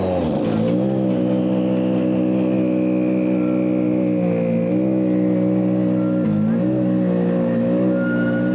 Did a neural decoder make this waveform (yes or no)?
no